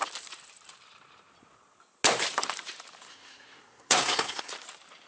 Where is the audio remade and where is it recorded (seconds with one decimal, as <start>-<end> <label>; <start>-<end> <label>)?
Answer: 0.0-3.1 recorded; 3.1-4.5 remade; 4.5-5.1 recorded